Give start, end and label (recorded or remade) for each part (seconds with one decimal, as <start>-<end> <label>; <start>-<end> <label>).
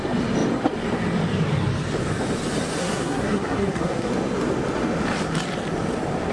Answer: 0.0-2.8 recorded; 2.8-4.1 remade; 4.1-6.3 recorded